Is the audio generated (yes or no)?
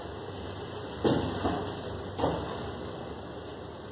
no